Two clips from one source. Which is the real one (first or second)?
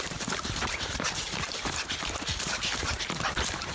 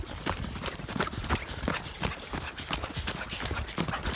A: second